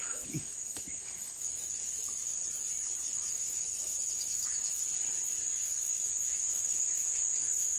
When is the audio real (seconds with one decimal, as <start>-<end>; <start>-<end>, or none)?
2.4-3.0; 4.9-5.5